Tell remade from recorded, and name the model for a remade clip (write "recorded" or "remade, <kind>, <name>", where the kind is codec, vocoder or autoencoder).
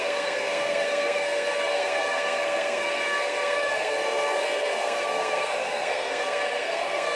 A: remade, codec, SNAC